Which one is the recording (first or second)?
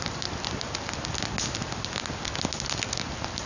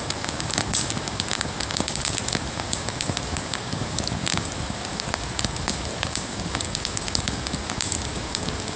first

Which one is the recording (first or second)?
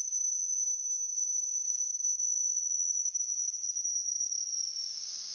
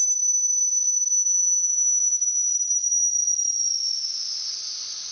second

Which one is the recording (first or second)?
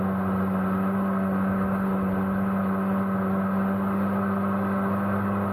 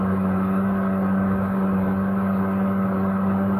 first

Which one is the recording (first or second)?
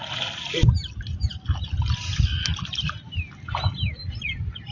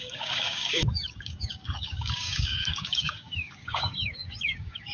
first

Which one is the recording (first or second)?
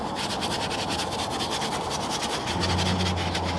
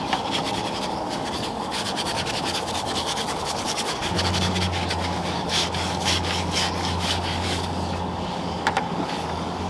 first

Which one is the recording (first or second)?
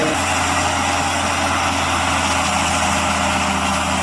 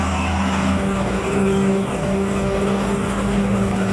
first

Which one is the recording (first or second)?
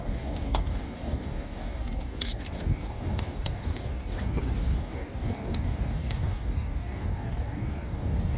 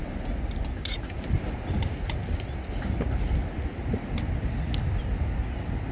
second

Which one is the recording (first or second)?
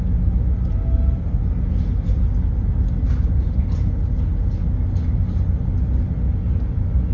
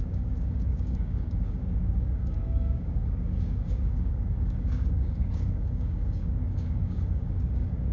first